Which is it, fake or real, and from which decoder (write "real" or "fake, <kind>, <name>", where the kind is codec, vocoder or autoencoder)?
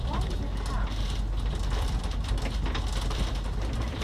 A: real